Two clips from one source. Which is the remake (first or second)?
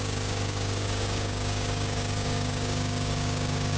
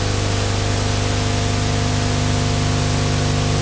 first